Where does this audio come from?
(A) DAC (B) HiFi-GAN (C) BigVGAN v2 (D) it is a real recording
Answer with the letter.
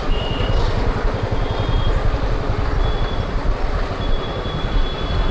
C